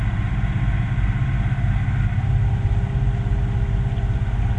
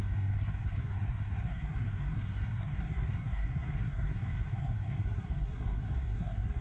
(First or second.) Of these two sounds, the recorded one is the first